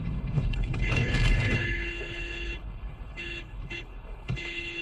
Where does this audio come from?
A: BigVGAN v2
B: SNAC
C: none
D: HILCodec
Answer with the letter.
D